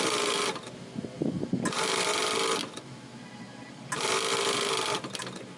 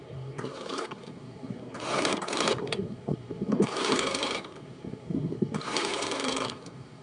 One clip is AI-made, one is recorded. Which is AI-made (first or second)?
second